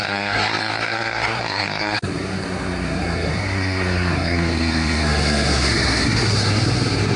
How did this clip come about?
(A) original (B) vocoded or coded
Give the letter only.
B